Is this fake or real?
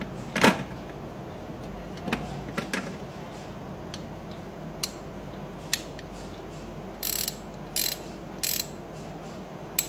real